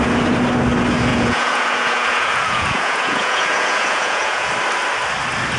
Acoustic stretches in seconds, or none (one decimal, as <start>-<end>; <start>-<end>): 0.0-1.1; 4.5-5.6